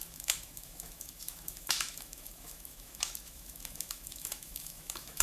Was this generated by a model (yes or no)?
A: yes